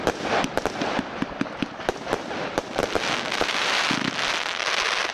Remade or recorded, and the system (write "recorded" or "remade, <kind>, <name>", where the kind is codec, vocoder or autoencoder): recorded